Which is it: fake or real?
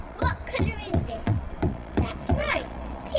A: fake